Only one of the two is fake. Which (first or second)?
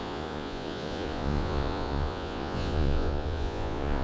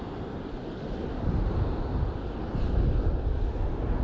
first